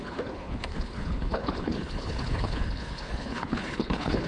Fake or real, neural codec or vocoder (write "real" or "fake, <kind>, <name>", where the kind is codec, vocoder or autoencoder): fake, codec, HILCodec